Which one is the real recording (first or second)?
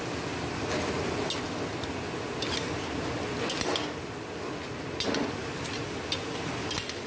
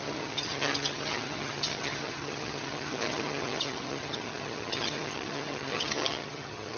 first